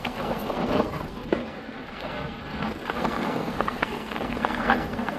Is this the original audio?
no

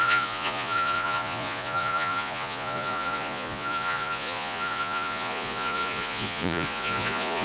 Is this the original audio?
no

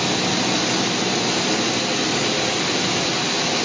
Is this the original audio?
yes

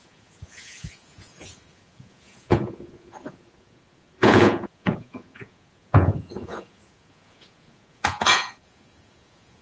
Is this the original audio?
no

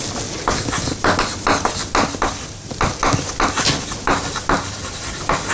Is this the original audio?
yes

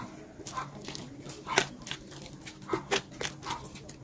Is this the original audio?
yes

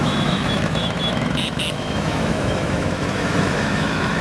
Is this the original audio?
no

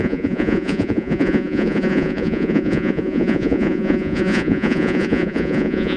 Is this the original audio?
no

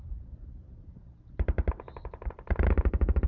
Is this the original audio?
no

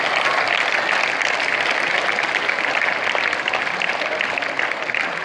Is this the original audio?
yes